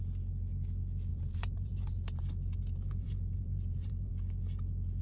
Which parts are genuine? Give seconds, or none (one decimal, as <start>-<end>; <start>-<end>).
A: 0.0-1.1; 4.1-5.0